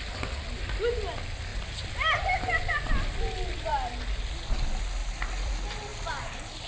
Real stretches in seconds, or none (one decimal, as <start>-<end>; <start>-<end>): 0.0-5.0; 5.5-6.7